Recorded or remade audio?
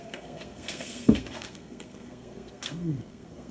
remade